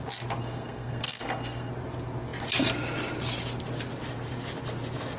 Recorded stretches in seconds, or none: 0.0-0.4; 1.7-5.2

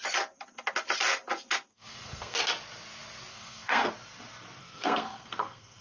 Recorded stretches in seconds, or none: 0.0-1.7; 2.4-3.3; 3.9-4.6

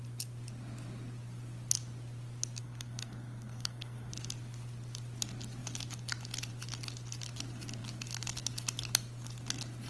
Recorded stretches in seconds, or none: 0.0-2.6; 4.1-9.9

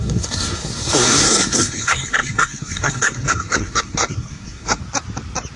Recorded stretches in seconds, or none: 4.8-5.6

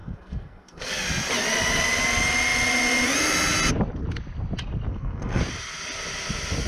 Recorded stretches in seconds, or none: 0.9-4.9; 5.4-6.7

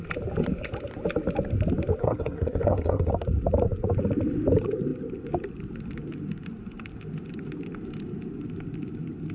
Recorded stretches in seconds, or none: 0.0-2.0; 3.1-9.3

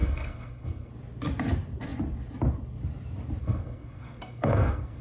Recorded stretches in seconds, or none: 0.9-3.4